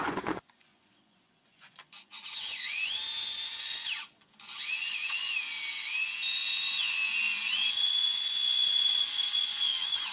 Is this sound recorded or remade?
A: remade